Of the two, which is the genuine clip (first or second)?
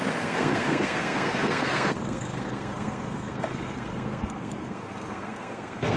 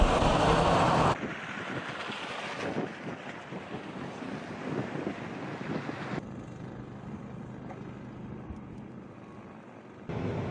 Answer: second